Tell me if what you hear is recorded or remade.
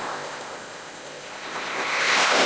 remade